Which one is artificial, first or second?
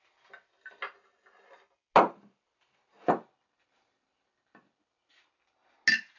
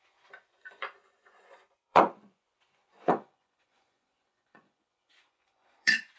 second